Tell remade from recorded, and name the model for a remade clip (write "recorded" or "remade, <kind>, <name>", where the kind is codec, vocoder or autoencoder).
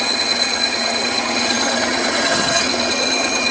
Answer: remade, vocoder, HiFi-GAN